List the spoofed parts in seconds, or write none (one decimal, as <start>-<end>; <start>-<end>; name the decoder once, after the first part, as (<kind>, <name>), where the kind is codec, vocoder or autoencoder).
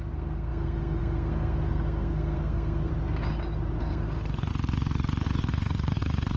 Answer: 0.0-2.9 (codec, SNAC); 3.8-4.5; 5.5-6.4